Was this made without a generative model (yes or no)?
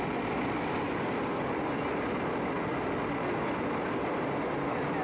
yes